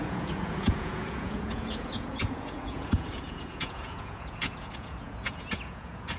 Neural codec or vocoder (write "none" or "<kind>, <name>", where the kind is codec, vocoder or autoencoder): vocoder, Vocos